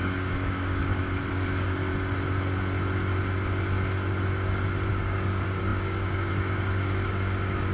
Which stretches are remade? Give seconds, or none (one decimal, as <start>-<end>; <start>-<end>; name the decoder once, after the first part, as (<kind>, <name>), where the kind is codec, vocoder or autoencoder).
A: 0.0-0.8 (codec, DAC); 1.3-1.9; 4.9-7.7